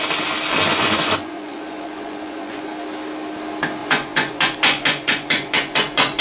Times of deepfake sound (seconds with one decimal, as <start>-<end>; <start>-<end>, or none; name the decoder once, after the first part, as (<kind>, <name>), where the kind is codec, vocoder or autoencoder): 0.7-2.7 (vocoder, Vocos); 3.8-6.2